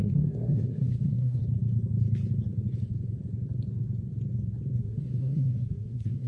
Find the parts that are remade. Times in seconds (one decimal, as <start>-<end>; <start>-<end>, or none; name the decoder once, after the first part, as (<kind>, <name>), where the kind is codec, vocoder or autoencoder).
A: 0.0-1.4 (codec, SNAC); 4.8-6.3